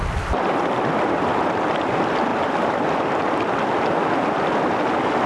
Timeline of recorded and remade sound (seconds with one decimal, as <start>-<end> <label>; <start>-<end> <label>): 0.0-5.3 recorded